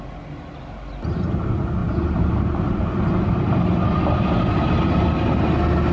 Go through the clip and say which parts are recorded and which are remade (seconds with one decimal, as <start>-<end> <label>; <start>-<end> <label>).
0.0-5.9 recorded